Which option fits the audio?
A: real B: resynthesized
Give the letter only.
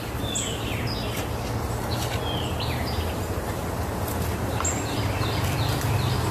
A